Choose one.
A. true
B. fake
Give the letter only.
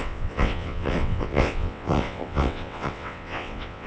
B